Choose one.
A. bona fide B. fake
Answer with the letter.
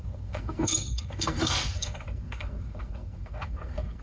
B